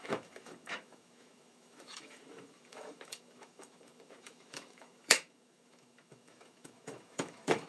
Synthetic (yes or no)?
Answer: yes